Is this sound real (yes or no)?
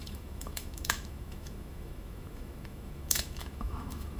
no